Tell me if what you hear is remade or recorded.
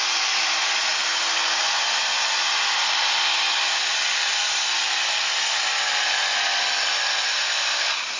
recorded